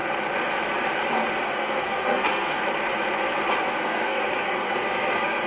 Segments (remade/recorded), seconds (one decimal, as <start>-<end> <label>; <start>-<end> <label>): 0.0-1.4 recorded; 1.4-2.6 remade; 2.6-3.7 recorded; 3.7-5.5 remade